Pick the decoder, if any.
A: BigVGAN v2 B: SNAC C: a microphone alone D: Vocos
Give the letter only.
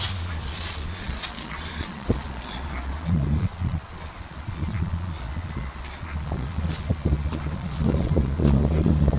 D